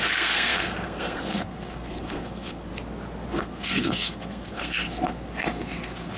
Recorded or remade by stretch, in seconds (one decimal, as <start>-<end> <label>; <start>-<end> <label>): 0.0-2.7 remade; 2.7-3.3 recorded; 3.3-6.2 remade